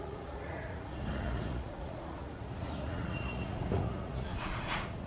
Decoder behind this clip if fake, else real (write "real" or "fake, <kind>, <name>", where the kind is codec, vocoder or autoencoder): fake, vocoder, Vocos